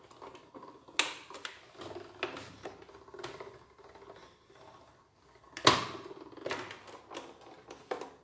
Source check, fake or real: real